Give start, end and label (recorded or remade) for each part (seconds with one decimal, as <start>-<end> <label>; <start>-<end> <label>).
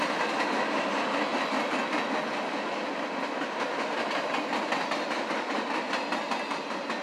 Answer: 0.0-7.0 recorded